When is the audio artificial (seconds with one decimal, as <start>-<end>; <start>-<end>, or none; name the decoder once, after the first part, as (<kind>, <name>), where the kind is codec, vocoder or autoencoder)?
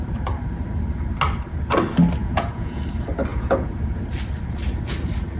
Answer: 2.2-2.8 (vocoder, Vocos); 3.3-4.0